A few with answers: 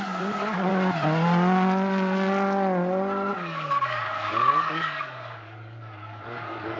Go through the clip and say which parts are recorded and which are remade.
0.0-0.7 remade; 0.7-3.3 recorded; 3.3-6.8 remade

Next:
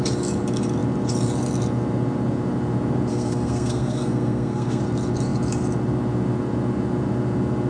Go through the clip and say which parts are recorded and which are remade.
0.0-3.1 recorded; 3.1-4.8 remade; 4.8-7.7 recorded

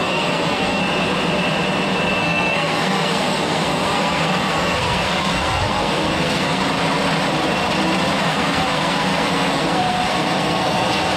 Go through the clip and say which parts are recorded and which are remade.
0.0-0.8 remade; 0.8-2.2 recorded; 2.2-6.6 remade; 6.6-8.2 recorded; 8.2-11.2 remade